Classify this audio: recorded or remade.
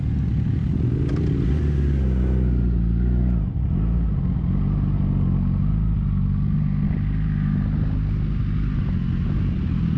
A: recorded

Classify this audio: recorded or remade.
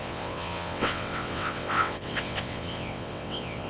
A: remade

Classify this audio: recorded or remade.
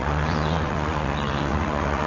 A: remade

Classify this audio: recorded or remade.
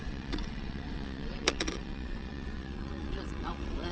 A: remade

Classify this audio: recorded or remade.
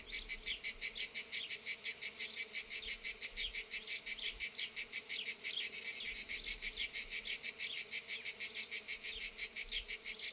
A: recorded